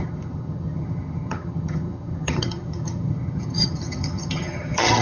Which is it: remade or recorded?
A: remade